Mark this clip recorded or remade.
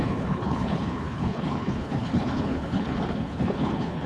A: remade